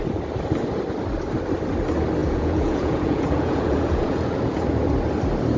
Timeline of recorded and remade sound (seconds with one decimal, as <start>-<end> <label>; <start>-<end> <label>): 0.0-2.2 recorded; 2.2-4.9 remade; 4.9-5.6 recorded